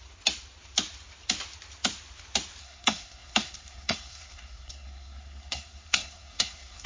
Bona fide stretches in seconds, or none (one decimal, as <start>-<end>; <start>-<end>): 0.0-2.6